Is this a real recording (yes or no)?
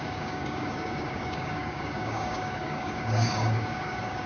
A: no